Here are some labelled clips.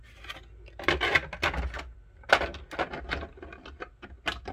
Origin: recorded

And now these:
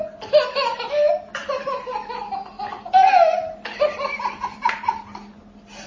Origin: recorded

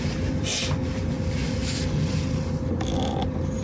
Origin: recorded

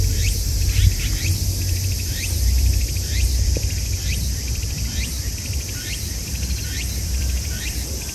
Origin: remade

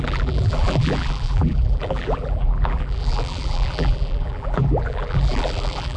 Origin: remade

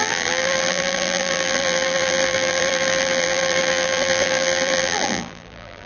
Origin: remade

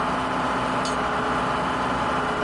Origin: recorded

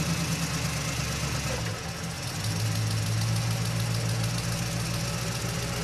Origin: recorded